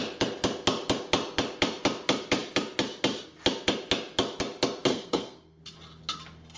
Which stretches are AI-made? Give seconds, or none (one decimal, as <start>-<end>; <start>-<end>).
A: 4.9-5.6